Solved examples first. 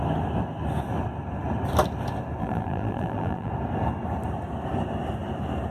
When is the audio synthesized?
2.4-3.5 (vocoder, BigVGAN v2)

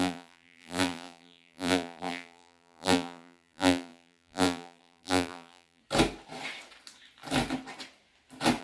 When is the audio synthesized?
0.0-5.8 (vocoder, BigVGAN v2)

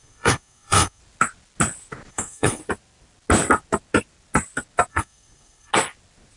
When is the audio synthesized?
0.0-1.0 (codec, SNAC); 2.1-2.6; 4.9-5.7

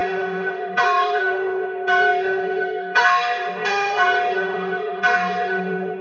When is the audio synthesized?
0.0-6.0 (autoencoder, DAC-VAE)

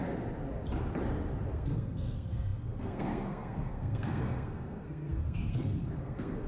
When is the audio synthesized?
1.5-6.5 (codec, SNAC)

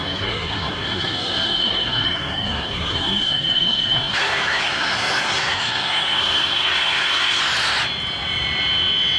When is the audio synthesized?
0.0-7.4 (codec, SNAC)

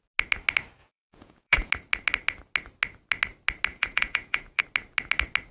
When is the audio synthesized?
0.8-1.7 (vocoder, Vocos); 3.7-4.6

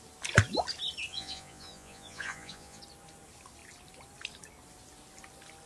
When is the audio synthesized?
1.1-2.8 (vocoder, Vocos)